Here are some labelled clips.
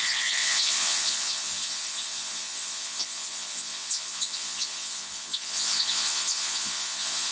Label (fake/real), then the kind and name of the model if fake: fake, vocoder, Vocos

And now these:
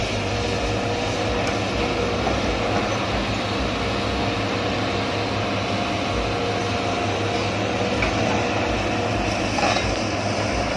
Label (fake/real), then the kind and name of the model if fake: real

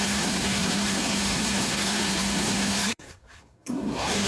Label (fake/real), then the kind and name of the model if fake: fake, codec, SNAC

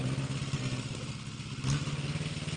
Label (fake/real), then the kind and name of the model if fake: real